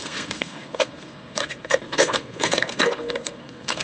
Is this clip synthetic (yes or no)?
yes